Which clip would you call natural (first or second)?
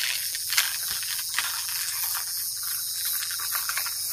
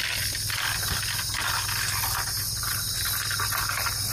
second